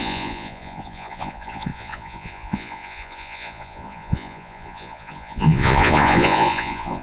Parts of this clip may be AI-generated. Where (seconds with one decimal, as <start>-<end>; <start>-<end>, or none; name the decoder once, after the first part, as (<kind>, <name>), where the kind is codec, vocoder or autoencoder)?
0.0-7.0 (vocoder, Vocos)